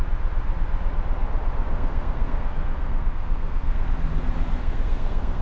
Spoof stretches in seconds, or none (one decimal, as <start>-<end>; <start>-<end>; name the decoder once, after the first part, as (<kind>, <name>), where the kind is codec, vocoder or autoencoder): 1.7-3.9 (codec, SNAC); 4.6-5.4